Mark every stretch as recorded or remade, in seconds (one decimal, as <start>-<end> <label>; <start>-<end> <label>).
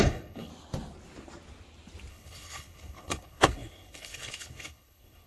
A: 0.0-0.5 remade; 0.5-2.1 recorded; 2.1-5.3 remade